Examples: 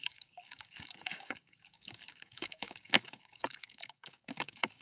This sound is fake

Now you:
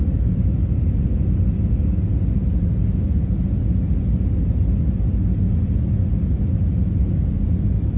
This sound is real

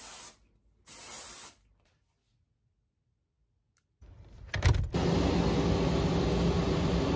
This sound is real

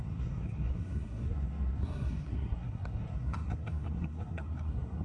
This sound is fake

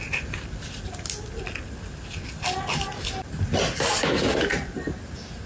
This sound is real